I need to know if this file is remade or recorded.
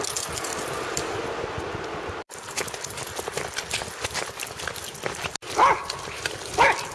recorded